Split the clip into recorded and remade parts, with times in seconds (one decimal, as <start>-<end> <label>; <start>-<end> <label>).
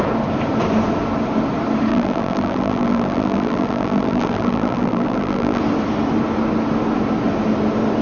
0.0-1.9 recorded; 1.9-5.6 remade; 5.6-8.0 recorded